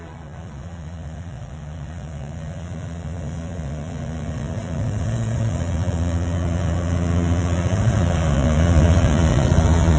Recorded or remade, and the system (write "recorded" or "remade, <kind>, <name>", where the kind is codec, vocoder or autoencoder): remade, vocoder, Vocos